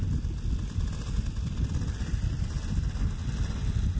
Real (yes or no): yes